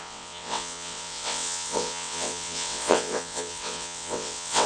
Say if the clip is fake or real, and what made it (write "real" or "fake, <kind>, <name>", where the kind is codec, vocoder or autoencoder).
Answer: fake, vocoder, WaveNeXt